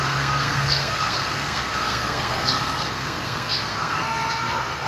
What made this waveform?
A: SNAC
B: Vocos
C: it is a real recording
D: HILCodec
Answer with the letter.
A